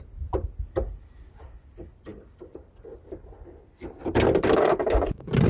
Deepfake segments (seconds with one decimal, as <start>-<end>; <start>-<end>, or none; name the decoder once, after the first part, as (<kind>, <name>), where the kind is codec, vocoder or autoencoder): none